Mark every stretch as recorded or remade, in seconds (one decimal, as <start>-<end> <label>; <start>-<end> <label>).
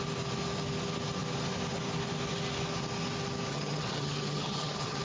0.0-3.5 recorded; 3.5-5.0 remade